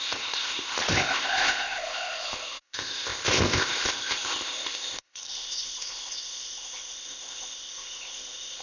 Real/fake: fake